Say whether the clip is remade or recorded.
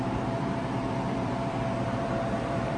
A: remade